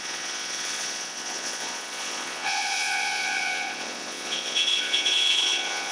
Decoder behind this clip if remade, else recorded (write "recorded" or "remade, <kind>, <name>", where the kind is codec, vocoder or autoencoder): remade, vocoder, Vocos